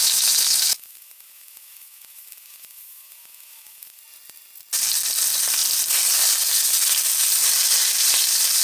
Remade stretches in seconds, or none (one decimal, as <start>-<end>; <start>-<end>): 0.0-4.0